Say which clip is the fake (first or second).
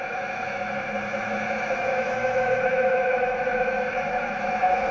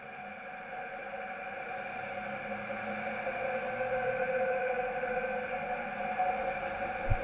first